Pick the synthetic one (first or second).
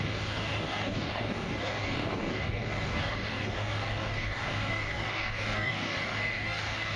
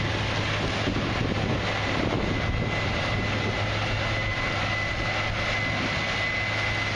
first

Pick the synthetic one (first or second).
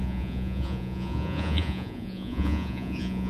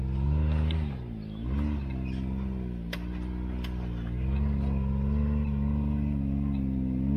first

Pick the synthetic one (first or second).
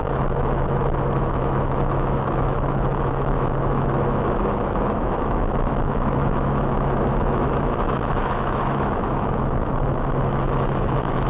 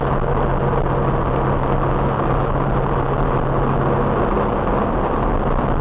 first